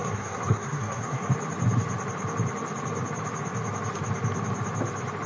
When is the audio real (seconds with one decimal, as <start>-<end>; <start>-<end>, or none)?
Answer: 1.3-5.3